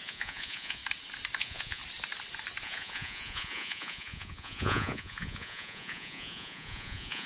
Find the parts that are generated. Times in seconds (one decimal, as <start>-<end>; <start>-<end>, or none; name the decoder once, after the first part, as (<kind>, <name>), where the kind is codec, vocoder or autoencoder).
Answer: 0.0-0.8 (vocoder, Vocos); 1.4-1.8; 2.6-7.3